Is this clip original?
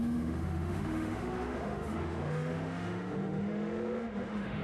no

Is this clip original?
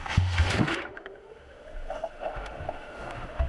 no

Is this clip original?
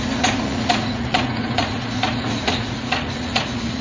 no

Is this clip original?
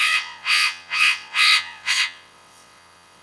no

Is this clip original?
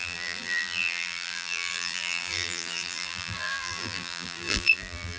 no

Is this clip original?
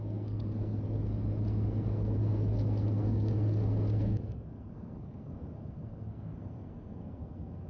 no